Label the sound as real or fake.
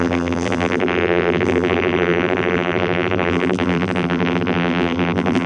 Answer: fake